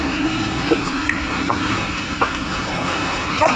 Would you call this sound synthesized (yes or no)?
yes